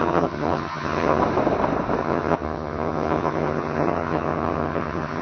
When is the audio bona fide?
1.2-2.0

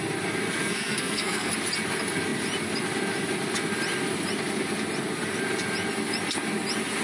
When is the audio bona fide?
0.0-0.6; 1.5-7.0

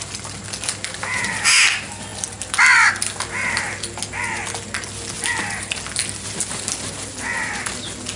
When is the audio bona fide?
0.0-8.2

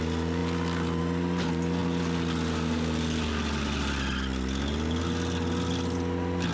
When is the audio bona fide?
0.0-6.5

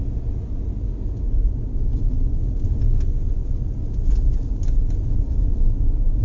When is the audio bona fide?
0.0-6.2

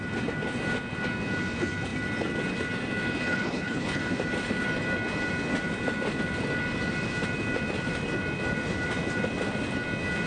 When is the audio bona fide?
0.0-3.3; 4.0-10.3

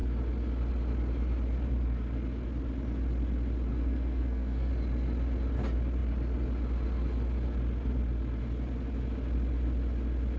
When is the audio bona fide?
0.0-3.7; 4.7-10.4

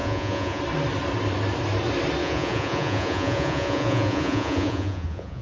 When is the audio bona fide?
0.6-2.2